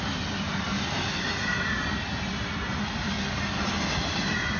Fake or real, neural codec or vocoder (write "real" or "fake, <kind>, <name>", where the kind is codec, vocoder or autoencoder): real